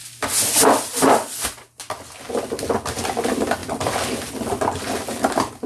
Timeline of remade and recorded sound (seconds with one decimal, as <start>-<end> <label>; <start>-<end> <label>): 0.0-5.7 recorded